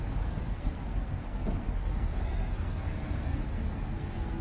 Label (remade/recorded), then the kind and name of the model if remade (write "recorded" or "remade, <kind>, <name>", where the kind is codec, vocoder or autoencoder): remade, codec, SNAC